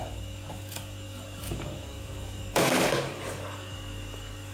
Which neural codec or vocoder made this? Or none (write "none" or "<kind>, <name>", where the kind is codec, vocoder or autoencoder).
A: codec, DAC